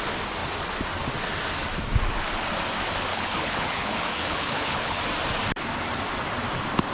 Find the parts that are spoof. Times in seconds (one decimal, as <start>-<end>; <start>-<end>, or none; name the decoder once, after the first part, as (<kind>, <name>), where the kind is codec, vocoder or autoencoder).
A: 3.1-5.0 (codec, HILCodec)